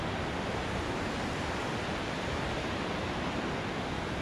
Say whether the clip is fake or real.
real